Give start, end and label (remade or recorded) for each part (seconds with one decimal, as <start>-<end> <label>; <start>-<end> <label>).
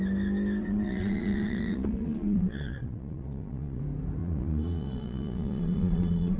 0.0-0.6 recorded; 0.6-3.8 remade; 3.8-4.2 recorded; 4.2-6.4 remade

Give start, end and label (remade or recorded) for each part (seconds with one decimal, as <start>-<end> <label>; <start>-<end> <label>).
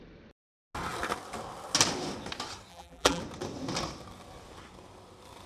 0.0-2.7 recorded; 2.7-3.2 remade; 3.2-5.5 recorded